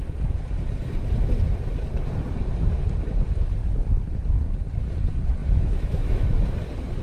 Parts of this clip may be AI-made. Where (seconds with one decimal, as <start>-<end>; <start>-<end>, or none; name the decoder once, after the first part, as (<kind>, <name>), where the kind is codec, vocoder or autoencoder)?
5.4-6.4 (autoencoder, DAC-VAE)